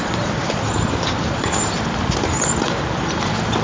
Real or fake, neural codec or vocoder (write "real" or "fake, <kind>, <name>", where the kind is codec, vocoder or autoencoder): fake, vocoder, BigVGAN v2